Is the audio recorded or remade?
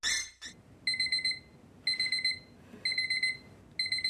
recorded